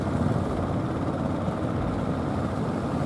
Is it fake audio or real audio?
real